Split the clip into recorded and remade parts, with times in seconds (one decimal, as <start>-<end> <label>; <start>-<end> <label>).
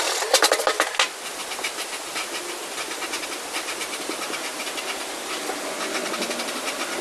0.0-7.0 recorded